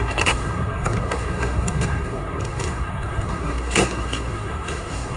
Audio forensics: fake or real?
fake